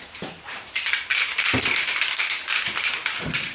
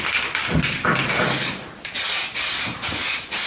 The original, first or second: second